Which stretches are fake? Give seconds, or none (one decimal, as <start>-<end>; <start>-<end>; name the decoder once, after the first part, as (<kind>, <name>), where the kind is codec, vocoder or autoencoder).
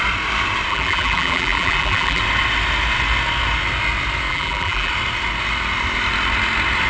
0.7-2.2 (vocoder, BigVGAN v2); 4.3-4.9